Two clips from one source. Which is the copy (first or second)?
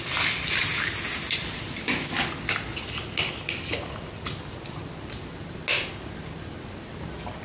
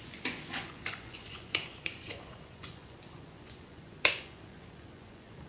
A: second